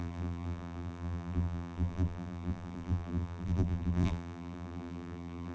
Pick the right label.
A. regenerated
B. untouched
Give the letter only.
A